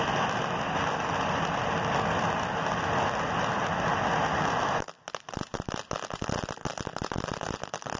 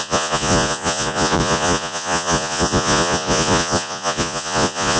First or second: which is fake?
second